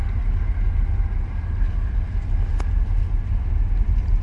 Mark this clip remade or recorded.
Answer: recorded